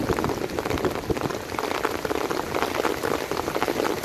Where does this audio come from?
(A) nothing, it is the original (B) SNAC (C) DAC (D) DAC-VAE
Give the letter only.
A